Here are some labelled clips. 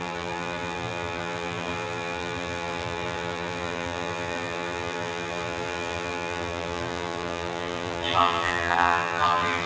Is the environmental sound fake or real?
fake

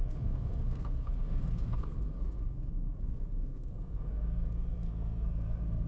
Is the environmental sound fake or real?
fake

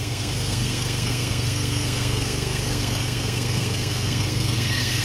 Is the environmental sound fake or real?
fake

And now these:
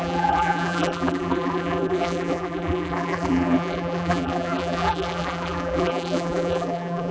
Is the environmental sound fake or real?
fake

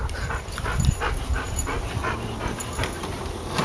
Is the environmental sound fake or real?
real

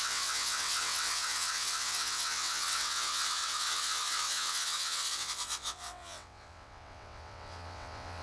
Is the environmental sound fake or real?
fake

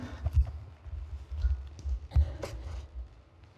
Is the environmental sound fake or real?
real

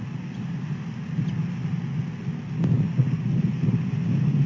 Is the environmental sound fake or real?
real